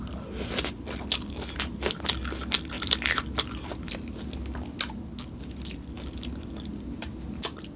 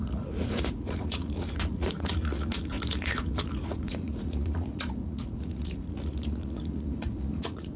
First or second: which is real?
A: first